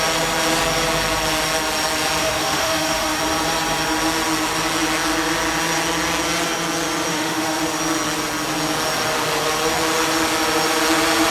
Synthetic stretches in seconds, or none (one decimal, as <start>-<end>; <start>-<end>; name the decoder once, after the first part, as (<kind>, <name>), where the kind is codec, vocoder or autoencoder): 2.2-3.2 (autoencoder, DAC-VAE); 7.1-7.6